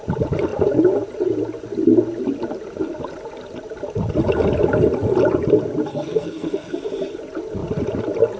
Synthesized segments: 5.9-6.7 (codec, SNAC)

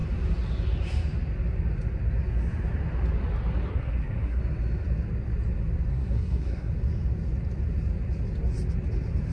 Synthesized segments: 3.7-4.4 (codec, SNAC); 5.9-6.7

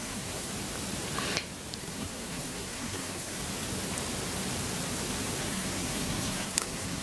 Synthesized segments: 0.0-0.5 (codec, SNAC); 1.8-3.4; 5.4-7.0